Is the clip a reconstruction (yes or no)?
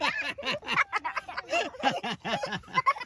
no